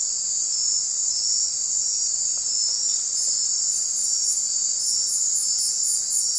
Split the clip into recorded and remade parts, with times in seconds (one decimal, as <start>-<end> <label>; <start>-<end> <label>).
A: 0.0-6.4 recorded